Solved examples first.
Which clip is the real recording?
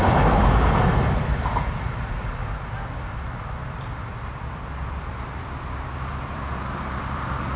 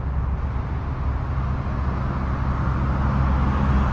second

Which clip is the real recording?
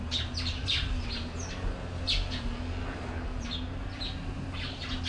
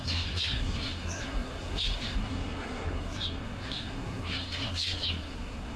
first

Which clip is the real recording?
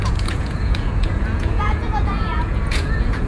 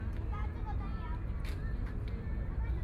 second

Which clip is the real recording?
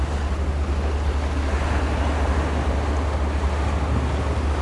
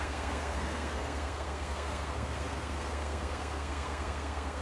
first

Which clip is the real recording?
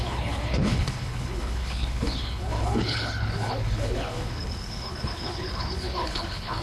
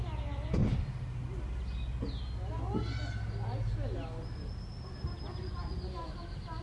second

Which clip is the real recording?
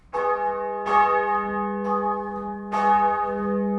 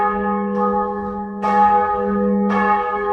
first